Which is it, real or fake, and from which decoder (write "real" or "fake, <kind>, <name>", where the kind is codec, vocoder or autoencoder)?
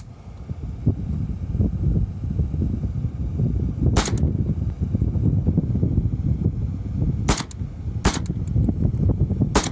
real